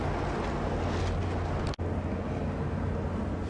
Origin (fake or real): real